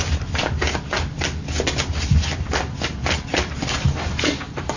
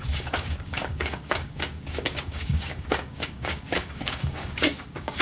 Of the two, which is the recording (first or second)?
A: first